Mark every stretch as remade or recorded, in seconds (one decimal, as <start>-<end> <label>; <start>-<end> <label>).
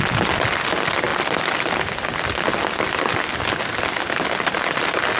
0.0-5.2 recorded